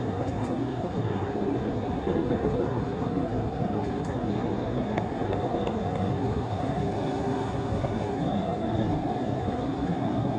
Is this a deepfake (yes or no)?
yes